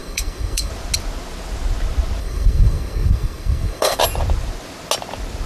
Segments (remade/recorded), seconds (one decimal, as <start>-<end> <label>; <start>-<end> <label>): 0.0-0.7 remade; 0.7-2.2 recorded; 2.2-4.0 remade; 4.0-5.5 recorded